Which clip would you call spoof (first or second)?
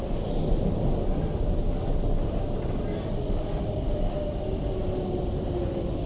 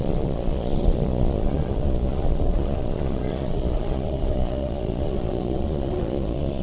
second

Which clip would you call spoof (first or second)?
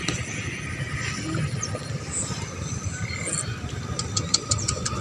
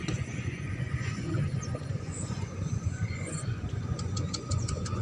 second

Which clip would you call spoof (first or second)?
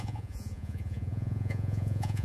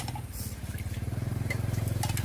first